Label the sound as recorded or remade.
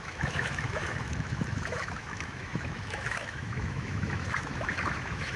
remade